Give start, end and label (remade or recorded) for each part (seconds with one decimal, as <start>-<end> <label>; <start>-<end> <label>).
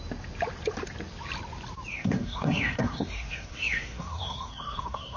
0.0-1.9 recorded; 1.9-5.2 remade